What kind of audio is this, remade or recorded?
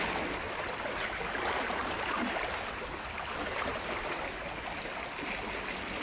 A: recorded